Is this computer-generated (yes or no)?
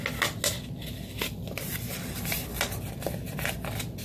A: no